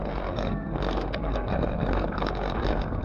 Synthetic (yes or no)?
yes